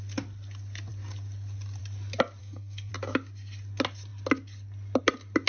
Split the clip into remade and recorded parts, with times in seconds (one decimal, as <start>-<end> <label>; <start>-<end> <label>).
0.0-2.4 recorded; 2.4-2.9 remade; 2.9-5.5 recorded